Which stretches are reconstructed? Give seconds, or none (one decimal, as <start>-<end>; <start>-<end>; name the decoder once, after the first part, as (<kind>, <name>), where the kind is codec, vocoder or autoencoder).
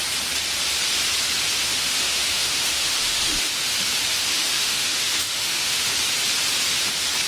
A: 1.6-3.5 (autoencoder, DAC-VAE); 4.3-5.9